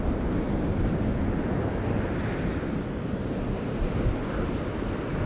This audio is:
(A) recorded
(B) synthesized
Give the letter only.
A